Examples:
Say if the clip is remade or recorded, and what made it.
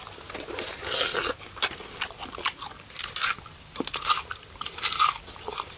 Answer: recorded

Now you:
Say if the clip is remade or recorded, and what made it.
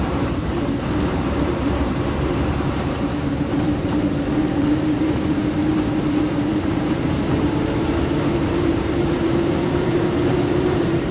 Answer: remade, vocoder, BigVGAN v2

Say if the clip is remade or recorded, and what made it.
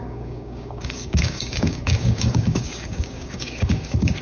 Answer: remade, codec, DAC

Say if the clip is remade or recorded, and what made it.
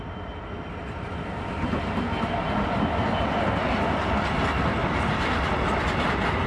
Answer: recorded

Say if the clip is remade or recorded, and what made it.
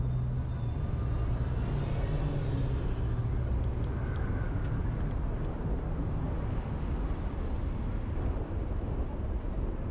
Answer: recorded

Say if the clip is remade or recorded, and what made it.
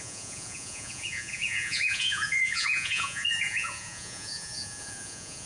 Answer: remade, vocoder, Vocos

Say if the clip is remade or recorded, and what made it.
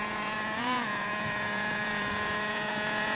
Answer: remade, vocoder, Vocos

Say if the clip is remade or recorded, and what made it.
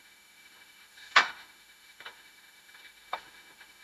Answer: remade, autoencoder, DAC-VAE